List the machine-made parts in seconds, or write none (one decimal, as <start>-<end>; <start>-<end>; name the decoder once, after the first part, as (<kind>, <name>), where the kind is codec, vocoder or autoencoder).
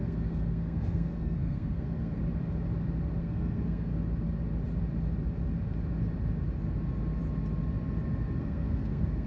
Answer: 0.0-2.2 (codec, SNAC); 3.2-3.9; 8.4-9.3